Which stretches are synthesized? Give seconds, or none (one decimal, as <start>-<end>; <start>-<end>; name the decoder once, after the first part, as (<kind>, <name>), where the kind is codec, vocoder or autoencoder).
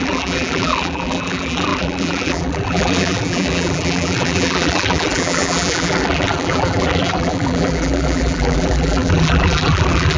0.0-10.2 (vocoder, BigVGAN v2)